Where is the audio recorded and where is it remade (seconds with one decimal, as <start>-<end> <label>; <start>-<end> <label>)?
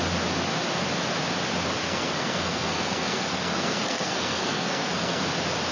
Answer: 0.0-1.8 recorded; 1.8-5.2 remade; 5.2-5.7 recorded